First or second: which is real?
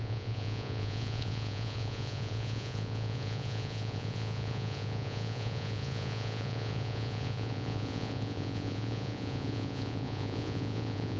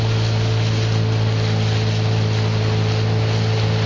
second